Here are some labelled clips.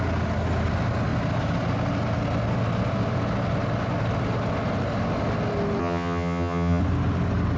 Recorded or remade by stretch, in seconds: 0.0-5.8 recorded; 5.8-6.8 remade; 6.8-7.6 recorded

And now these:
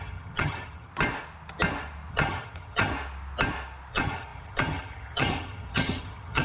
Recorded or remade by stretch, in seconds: 0.0-0.9 remade; 0.9-2.1 recorded; 2.1-2.9 remade; 2.9-3.9 recorded; 3.9-6.4 remade

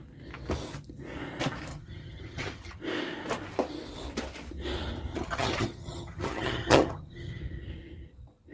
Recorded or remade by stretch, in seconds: 0.0-1.7 recorded; 1.7-2.8 remade; 2.8-5.1 recorded; 5.1-7.4 remade; 7.4-8.5 recorded

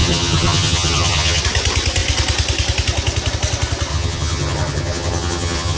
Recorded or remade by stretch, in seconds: 0.0-1.4 remade; 1.4-3.9 recorded; 3.9-5.8 remade